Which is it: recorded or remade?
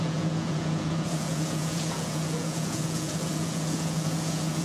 remade